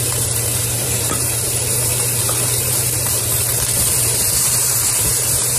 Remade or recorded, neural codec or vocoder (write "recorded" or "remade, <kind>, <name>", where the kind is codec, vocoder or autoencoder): remade, vocoder, BigVGAN v2